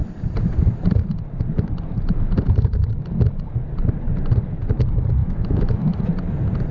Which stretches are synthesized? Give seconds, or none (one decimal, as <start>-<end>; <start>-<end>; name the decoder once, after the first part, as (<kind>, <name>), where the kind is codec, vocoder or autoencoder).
5.2-6.0 (autoencoder, DAC-VAE)